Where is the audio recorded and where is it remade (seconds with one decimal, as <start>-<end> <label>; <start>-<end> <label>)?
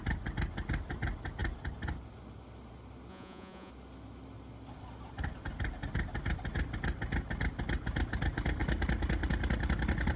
0.0-3.1 recorded; 3.1-3.7 remade; 3.7-10.2 recorded